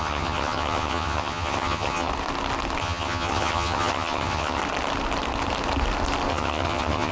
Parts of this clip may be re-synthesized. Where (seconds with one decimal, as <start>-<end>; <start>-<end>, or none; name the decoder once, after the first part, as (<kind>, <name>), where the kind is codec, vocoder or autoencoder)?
0.0-2.1 (vocoder, HiFi-GAN); 2.8-4.6; 6.3-7.1